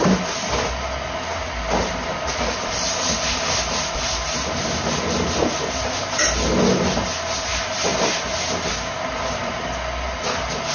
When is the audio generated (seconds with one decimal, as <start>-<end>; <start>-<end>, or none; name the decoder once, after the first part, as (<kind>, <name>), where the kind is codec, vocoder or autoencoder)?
none